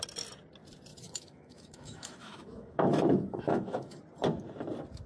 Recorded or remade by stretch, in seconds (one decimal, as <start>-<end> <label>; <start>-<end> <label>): 0.0-0.9 recorded; 0.9-4.0 remade; 4.0-5.1 recorded